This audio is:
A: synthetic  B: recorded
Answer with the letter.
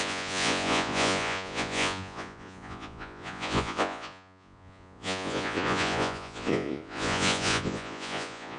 A